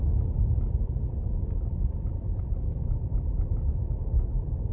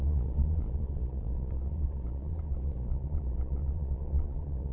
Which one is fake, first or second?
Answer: second